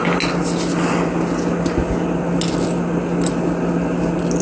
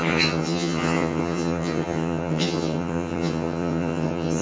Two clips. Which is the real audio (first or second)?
first